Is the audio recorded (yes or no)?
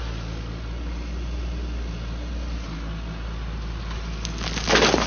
yes